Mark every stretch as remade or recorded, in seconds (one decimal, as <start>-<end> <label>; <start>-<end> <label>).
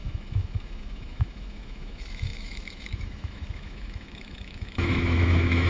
0.0-5.7 remade